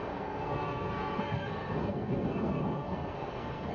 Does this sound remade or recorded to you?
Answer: remade